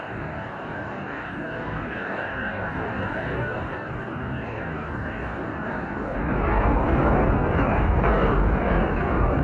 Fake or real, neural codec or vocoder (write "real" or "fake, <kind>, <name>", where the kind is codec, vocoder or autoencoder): fake, codec, DAC